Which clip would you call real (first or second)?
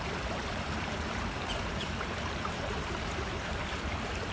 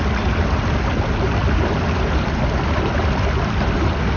second